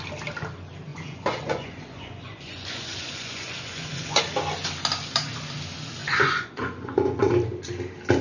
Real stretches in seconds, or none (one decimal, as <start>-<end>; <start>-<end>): 0.0-0.9; 4.2-6.0; 7.3-8.2